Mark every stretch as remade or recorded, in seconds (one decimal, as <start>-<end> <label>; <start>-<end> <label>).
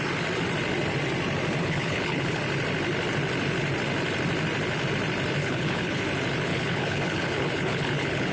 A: 0.0-1.6 recorded; 1.6-2.4 remade; 2.4-5.4 recorded; 5.4-6.0 remade; 6.0-6.5 recorded; 6.5-8.3 remade